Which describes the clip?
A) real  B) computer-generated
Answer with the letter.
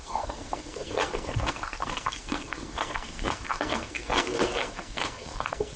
B